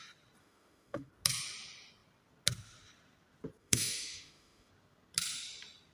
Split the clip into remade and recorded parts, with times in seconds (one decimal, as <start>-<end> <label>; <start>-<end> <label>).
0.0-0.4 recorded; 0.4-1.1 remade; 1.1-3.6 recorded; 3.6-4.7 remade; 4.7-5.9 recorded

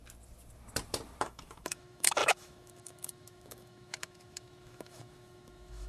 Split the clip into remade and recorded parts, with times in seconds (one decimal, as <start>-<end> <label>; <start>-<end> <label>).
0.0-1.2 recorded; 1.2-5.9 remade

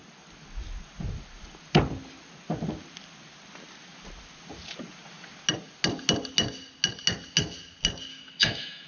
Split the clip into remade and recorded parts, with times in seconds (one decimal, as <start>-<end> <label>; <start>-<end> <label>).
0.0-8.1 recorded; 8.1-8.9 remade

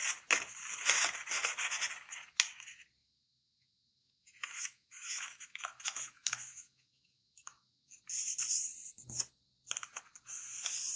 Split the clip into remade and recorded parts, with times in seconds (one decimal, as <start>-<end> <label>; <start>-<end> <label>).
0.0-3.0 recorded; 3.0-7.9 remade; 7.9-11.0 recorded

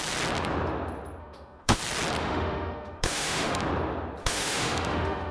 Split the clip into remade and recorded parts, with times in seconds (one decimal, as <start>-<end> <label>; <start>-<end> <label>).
0.0-1.2 recorded; 1.2-1.8 remade; 1.8-2.2 recorded; 2.2-3.6 remade; 3.6-4.2 recorded; 4.2-5.3 remade

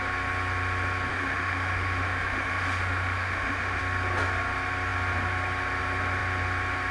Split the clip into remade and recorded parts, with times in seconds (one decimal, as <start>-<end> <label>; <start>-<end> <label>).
0.0-1.1 recorded; 1.1-3.8 remade; 3.8-6.9 recorded